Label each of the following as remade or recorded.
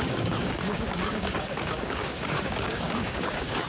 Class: remade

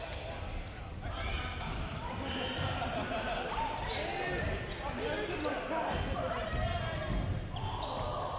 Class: recorded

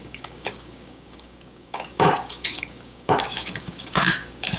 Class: remade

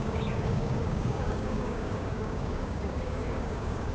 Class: remade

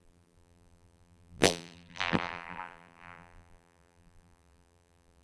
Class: remade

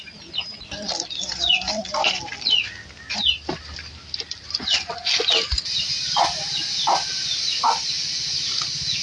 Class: recorded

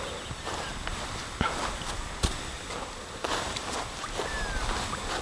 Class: recorded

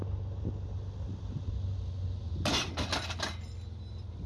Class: recorded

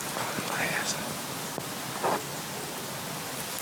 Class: recorded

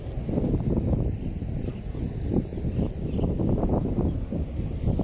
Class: recorded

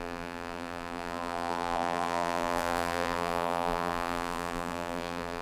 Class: remade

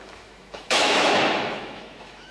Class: remade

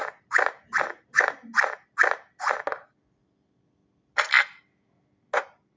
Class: recorded